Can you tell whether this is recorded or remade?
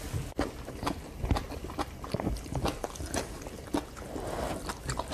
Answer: recorded